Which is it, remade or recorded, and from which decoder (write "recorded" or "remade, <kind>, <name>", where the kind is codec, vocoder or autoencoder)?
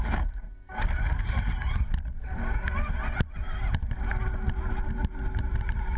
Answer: recorded